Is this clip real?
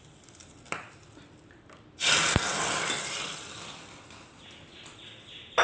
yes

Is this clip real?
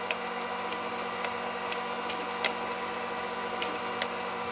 yes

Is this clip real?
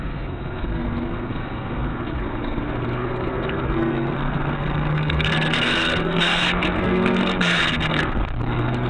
no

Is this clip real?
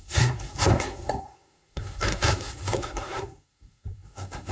no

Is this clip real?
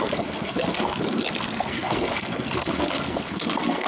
no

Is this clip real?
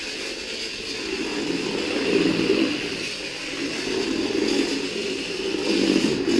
yes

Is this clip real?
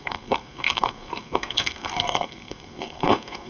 no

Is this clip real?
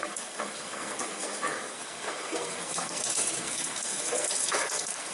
no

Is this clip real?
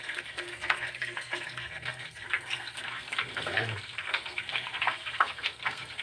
no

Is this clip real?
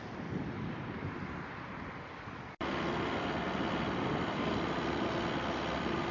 yes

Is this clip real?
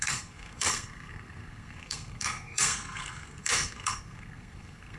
no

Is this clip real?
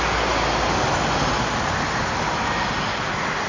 yes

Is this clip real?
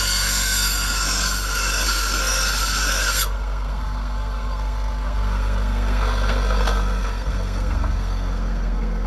no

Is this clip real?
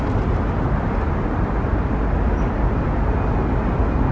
yes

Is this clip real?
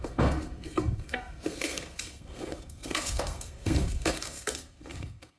no